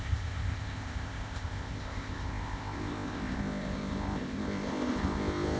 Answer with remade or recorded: remade